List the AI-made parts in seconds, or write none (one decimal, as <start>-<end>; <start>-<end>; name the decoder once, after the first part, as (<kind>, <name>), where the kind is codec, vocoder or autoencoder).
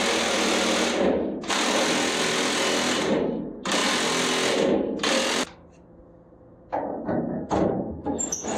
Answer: 7.3-8.2 (codec, SNAC)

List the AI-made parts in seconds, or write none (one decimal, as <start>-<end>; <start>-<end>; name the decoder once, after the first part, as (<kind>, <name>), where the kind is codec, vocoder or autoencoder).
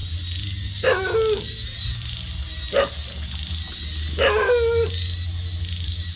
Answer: none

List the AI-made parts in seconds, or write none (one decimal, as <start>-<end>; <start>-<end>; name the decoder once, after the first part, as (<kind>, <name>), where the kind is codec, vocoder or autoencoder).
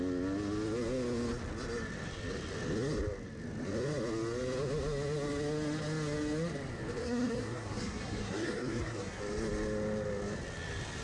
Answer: 7.0-9.2 (codec, SNAC)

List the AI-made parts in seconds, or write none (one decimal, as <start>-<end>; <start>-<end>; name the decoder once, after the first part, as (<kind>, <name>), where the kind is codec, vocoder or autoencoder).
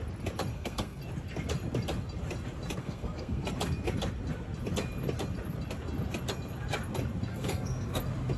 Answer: 0.5-1.0 (codec, SNAC); 2.8-3.4; 7.3-8.0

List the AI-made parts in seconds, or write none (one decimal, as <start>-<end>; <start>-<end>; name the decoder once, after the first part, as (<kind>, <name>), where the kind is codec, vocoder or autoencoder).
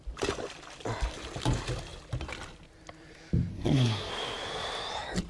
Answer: 3.5-4.1 (codec, SNAC)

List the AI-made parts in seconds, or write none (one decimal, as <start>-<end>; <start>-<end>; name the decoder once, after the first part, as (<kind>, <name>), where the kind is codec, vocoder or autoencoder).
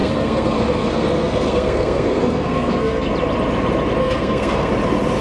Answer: 0.0-3.1 (codec, SNAC); 4.0-4.7